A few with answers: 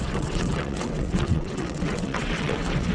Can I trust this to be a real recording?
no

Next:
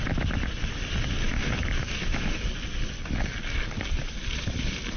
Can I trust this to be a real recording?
yes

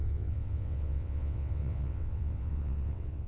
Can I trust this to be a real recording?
no